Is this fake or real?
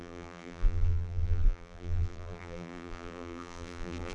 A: fake